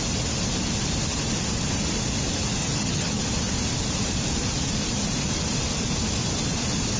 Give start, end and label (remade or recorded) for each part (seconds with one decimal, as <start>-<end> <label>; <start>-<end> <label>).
0.0-2.6 recorded; 2.6-3.2 remade; 3.2-7.0 recorded